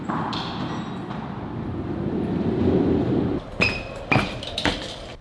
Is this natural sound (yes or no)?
no